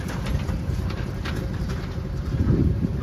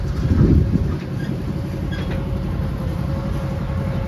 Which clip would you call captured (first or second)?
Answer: second